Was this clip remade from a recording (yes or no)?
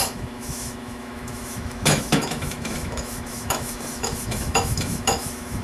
yes